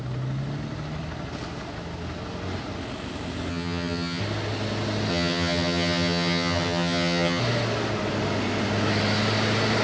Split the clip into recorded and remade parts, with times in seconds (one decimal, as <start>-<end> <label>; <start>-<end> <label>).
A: 0.0-3.5 recorded; 3.5-4.2 remade; 4.2-5.1 recorded; 5.1-7.4 remade; 7.4-9.8 recorded